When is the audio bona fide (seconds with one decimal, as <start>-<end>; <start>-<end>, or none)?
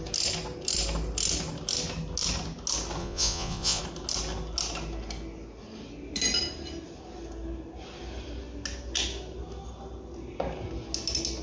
0.0-3.0; 3.8-11.4